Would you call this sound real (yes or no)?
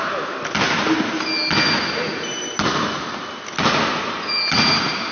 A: yes